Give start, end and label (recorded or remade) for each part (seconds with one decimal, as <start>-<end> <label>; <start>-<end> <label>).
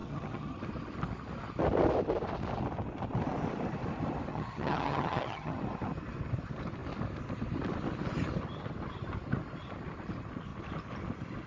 0.0-0.6 remade; 0.6-4.3 recorded; 4.3-5.6 remade; 5.6-11.5 recorded